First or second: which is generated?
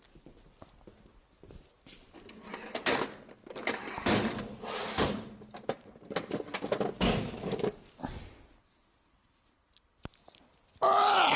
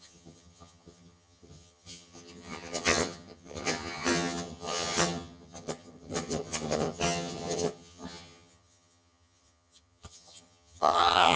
second